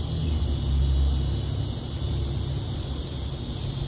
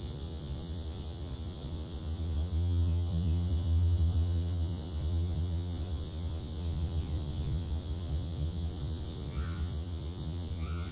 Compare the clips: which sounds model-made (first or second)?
second